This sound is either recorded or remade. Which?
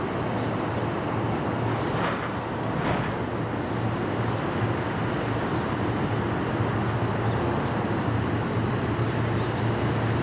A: recorded